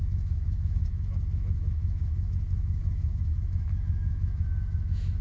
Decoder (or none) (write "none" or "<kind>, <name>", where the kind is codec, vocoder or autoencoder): autoencoder, DAC-VAE